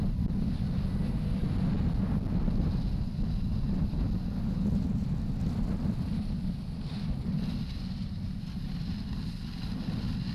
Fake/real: real